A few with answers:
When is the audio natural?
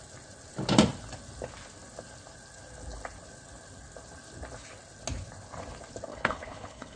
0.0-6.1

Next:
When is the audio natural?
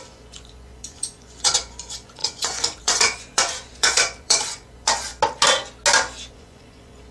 5.1-6.3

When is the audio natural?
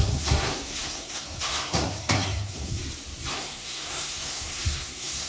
2.8-3.3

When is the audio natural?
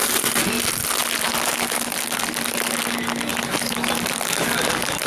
0.0-3.3; 4.6-5.1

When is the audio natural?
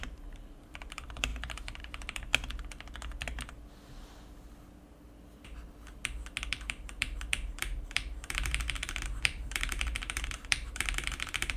2.3-6.5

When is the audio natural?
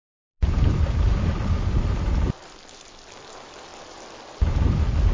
3.1-3.7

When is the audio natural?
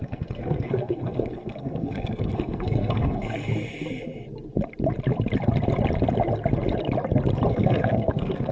3.5-7.5